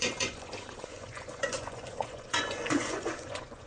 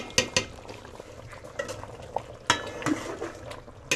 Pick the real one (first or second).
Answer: second